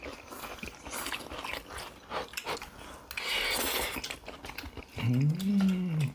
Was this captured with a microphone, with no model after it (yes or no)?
yes